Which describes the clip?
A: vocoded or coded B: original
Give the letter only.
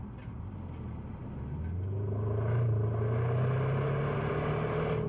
B